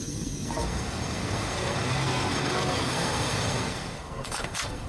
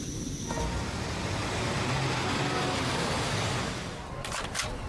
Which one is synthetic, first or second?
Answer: first